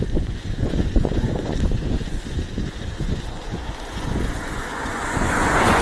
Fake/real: fake